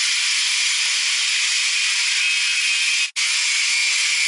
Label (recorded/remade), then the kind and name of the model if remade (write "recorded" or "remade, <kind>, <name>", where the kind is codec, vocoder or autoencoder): recorded